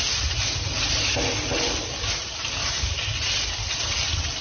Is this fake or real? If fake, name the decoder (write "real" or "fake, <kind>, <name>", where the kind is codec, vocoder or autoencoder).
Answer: real